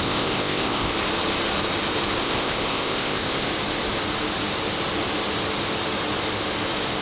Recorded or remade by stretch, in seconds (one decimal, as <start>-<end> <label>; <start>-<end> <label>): 0.0-0.9 remade; 0.9-2.2 recorded; 2.2-3.5 remade; 3.5-7.0 recorded